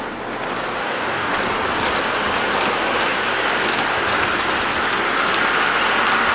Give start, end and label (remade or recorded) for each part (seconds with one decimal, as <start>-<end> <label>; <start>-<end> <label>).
0.0-0.8 recorded; 0.8-1.3 remade; 1.3-6.3 recorded